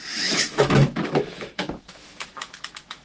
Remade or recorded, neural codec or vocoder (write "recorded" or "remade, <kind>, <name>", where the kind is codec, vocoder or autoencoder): remade, autoencoder, DAC-VAE